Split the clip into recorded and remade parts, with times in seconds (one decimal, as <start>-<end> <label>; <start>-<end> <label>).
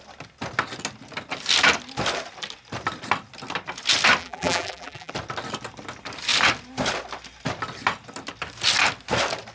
0.0-4.2 recorded; 4.2-5.1 remade; 5.1-9.5 recorded